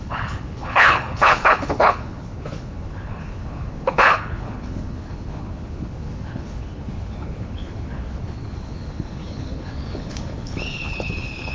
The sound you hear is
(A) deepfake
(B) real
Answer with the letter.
A